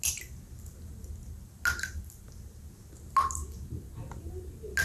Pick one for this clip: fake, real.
real